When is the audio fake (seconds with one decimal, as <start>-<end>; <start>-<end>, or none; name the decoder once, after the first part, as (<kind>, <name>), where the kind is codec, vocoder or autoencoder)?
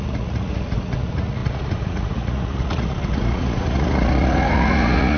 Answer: 0.0-5.2 (vocoder, Vocos)